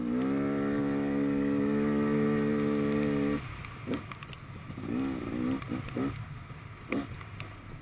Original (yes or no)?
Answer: yes